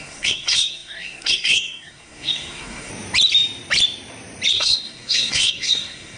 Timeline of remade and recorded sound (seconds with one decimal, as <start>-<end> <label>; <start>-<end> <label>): 0.0-2.9 remade; 2.9-4.5 recorded; 4.5-6.2 remade